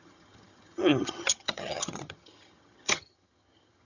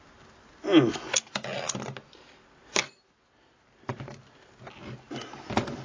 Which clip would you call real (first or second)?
second